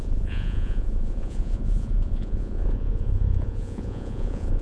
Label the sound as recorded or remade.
remade